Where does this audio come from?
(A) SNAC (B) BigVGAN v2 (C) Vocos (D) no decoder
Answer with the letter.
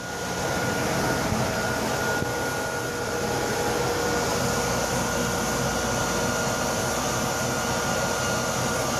D